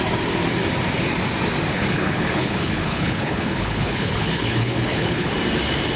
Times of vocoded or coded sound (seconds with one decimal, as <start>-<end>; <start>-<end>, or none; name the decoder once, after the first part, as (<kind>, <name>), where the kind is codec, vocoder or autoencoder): 1.7-5.3 (codec, HILCodec)